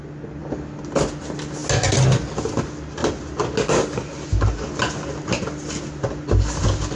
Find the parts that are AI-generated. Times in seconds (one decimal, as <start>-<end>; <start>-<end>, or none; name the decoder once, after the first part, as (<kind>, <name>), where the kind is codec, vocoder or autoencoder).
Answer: none